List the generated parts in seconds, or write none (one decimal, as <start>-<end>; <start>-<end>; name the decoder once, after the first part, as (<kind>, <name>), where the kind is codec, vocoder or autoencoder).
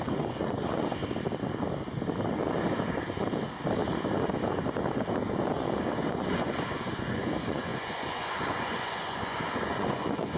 0.0-1.0 (vocoder, Vocos); 6.1-10.4